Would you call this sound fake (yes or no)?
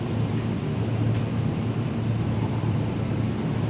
yes